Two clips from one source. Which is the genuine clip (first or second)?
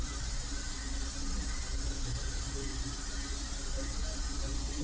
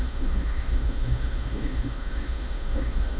first